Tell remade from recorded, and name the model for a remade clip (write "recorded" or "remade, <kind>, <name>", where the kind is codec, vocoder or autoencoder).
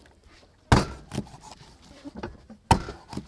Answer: recorded